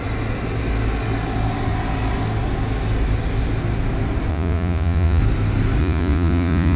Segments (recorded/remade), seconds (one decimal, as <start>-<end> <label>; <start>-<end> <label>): 0.0-4.3 recorded; 4.3-5.2 remade; 5.2-5.8 recorded; 5.8-6.8 remade